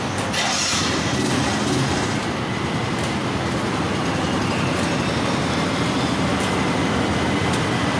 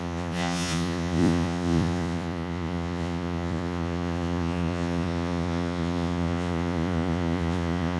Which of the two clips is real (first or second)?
first